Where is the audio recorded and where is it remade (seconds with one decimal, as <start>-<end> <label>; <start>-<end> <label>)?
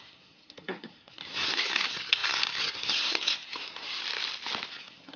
0.0-4.0 remade; 4.0-4.7 recorded; 4.7-5.2 remade